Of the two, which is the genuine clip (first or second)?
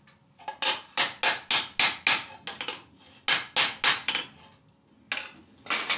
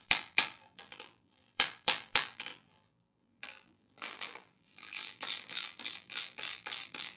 first